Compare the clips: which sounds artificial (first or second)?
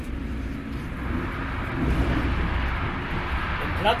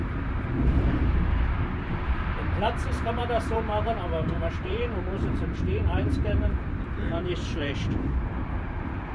second